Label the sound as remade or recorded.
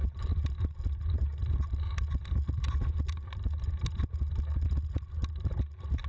recorded